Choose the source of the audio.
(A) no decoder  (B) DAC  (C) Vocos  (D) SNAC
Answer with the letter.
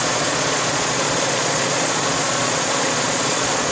C